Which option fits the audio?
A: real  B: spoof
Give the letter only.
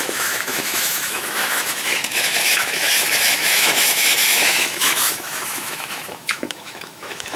B